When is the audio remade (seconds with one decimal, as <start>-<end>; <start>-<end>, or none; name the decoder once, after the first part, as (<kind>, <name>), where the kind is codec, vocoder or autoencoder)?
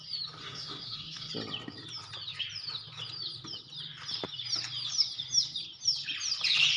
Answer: 0.4-1.3 (codec, SNAC)